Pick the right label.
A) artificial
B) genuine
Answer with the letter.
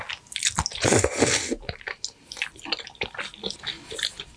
B